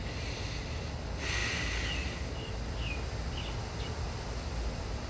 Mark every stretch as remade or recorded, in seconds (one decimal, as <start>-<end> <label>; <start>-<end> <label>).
0.0-5.1 recorded